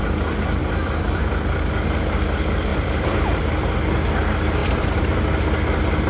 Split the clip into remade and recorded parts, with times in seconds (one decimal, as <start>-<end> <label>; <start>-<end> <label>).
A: 0.0-0.6 recorded; 0.6-1.2 remade; 1.2-2.7 recorded; 2.7-3.4 remade; 3.4-4.6 recorded; 4.6-5.2 remade; 5.2-6.1 recorded